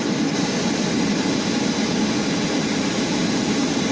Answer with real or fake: real